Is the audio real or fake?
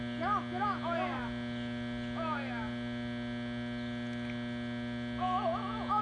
real